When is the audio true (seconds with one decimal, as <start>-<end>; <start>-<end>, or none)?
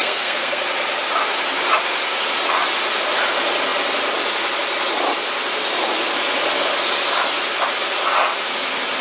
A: 0.6-9.0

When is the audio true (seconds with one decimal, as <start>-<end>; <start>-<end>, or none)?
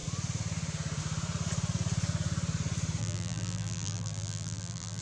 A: 0.0-3.0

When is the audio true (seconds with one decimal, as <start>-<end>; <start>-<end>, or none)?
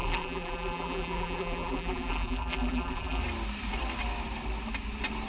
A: 3.2-5.3